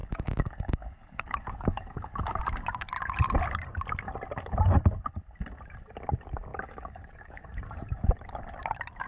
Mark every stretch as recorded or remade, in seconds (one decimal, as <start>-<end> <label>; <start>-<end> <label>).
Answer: 0.0-2.4 remade; 2.4-6.5 recorded; 6.5-7.6 remade; 7.6-9.1 recorded